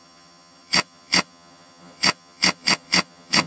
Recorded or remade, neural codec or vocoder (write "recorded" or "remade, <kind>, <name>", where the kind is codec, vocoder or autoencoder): remade, vocoder, HiFi-GAN